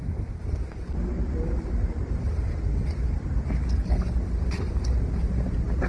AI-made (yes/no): no